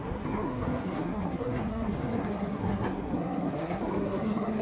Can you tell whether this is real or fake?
fake